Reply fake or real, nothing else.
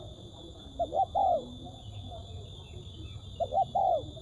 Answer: real